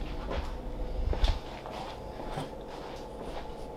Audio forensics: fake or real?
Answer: real